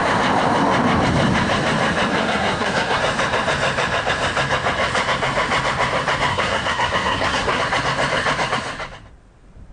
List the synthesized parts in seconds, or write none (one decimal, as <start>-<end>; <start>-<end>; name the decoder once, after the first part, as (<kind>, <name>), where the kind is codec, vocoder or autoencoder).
2.1-3.0 (codec, SNAC); 6.3-7.6